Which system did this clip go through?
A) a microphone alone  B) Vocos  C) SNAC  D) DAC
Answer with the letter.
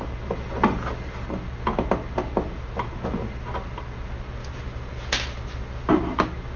A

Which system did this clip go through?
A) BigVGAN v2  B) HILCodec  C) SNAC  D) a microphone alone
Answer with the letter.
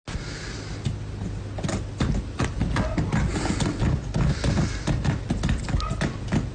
D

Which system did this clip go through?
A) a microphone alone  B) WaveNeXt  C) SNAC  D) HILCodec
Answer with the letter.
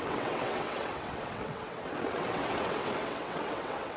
B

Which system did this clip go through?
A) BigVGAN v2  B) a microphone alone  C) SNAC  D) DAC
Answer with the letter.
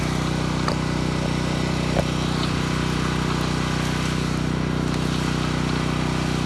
B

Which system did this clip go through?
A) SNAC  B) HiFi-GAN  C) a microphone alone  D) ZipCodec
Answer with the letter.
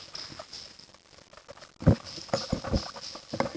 C